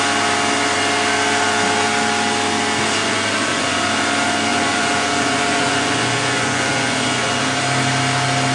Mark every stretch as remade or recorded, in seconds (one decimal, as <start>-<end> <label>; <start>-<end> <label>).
0.0-3.0 recorded; 3.0-3.8 remade; 3.8-4.5 recorded; 4.5-7.4 remade; 7.4-8.5 recorded